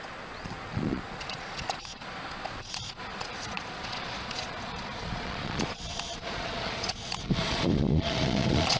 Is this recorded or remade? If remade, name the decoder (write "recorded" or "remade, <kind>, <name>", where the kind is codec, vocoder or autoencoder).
remade, vocoder, Vocos